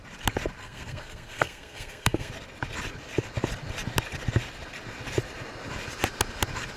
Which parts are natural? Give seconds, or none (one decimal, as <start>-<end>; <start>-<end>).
0.0-0.6; 2.3-6.8